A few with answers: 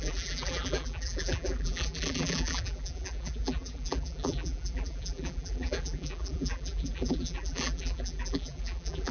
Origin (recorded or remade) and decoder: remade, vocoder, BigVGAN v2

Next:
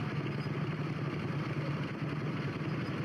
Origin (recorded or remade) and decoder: recorded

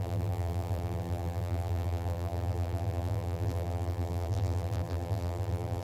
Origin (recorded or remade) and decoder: remade, vocoder, BigVGAN v2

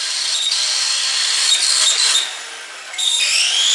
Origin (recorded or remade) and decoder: recorded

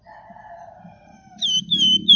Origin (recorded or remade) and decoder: remade, vocoder, BigVGAN v2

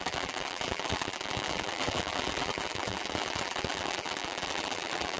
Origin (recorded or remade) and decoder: remade, vocoder, BigVGAN v2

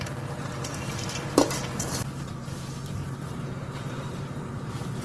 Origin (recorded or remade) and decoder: remade, vocoder, BigVGAN v2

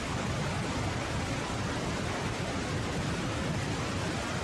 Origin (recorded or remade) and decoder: recorded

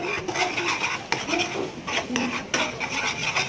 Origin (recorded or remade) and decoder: recorded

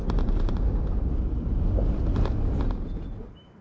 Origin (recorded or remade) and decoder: remade, vocoder, BigVGAN v2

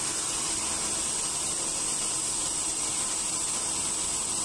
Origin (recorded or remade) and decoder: recorded